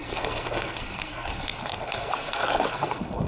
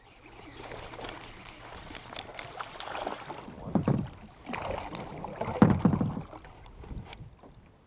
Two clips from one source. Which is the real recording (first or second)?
second